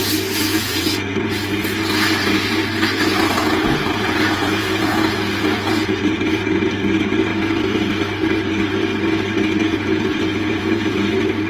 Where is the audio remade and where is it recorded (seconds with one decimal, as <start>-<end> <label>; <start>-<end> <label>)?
0.0-0.5 recorded; 0.5-1.3 remade; 1.3-3.4 recorded; 3.4-6.6 remade; 6.6-9.6 recorded; 9.6-11.1 remade; 11.1-11.5 recorded